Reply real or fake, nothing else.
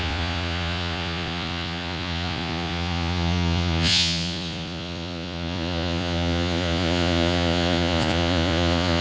fake